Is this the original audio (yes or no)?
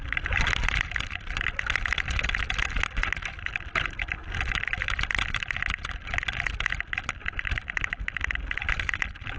yes